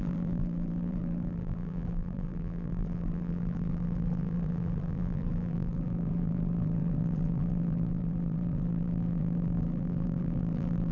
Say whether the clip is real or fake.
fake